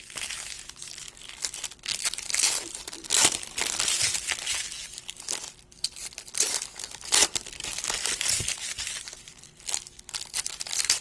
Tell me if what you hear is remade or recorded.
recorded